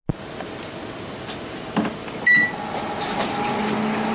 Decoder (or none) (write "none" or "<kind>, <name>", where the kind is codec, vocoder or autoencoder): none